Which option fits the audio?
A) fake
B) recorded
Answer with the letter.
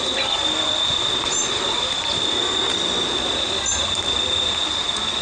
A